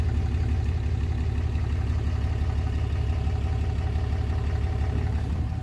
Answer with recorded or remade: recorded